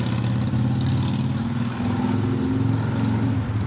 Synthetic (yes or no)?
no